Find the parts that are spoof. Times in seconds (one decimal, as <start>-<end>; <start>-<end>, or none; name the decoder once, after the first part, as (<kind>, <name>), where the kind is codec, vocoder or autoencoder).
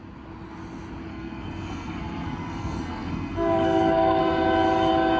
1.1-4.2 (codec, SNAC)